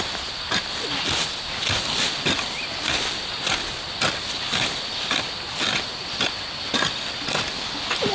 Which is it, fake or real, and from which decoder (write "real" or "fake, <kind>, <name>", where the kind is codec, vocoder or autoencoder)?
real